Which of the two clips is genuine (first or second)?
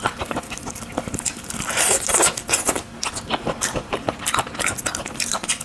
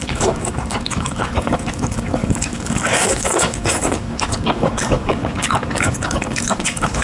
first